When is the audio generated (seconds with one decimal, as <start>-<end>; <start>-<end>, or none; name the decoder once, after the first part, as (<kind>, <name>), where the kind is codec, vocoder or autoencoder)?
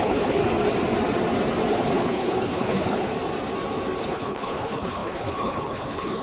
0.0-0.4 (codec, HILCodec); 1.7-3.1; 4.0-6.2